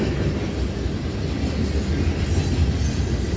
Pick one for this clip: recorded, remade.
recorded